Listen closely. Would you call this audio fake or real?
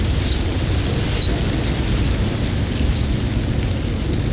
real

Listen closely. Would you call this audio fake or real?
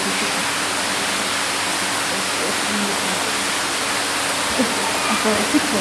real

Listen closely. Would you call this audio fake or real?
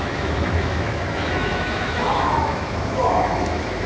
fake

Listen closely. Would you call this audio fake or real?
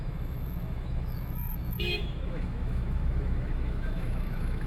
fake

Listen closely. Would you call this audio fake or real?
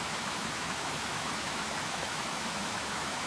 fake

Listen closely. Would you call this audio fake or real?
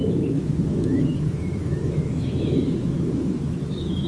fake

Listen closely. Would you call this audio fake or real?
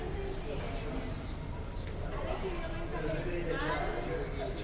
real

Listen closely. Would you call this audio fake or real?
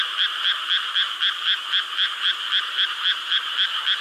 real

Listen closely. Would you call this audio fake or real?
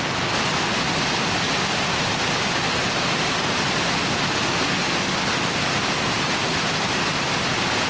real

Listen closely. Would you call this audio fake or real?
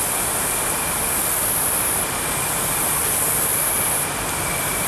real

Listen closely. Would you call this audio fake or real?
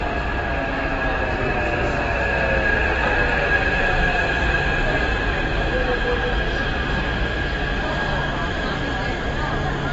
real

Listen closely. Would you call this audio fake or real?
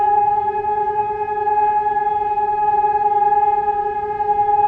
real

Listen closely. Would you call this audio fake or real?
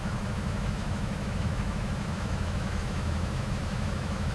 fake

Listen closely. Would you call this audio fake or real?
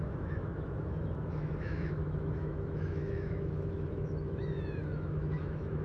fake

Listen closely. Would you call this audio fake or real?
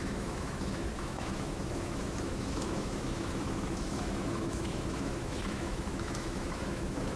fake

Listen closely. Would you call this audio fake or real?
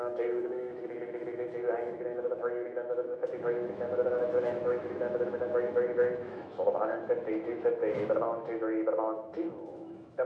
fake